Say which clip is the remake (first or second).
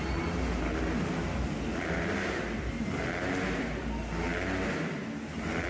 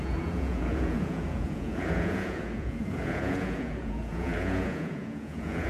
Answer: second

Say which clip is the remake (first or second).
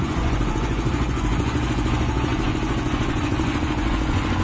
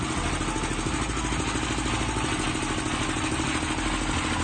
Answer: first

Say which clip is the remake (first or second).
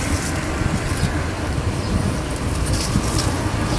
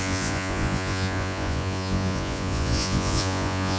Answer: second